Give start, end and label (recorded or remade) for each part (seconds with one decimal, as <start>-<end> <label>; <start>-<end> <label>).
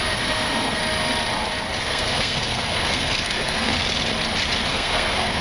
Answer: 0.0-0.8 remade; 0.8-1.8 recorded; 1.8-3.7 remade; 3.7-4.7 recorded; 4.7-5.4 remade